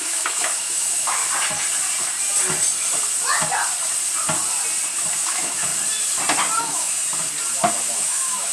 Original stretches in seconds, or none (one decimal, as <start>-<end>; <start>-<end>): 1.2-5.1; 5.7-6.6; 7.0-7.9